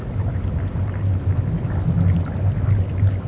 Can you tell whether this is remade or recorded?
recorded